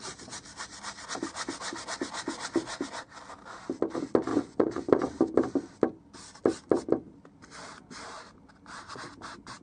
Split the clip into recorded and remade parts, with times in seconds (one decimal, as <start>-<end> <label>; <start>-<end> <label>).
0.0-4.3 recorded; 4.3-5.0 remade; 5.0-9.6 recorded